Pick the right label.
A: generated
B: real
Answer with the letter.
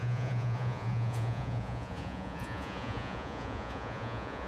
A